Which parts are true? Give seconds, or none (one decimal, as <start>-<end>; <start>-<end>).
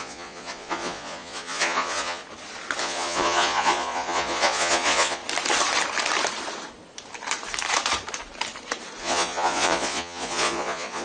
2.2-2.8; 5.2-9.0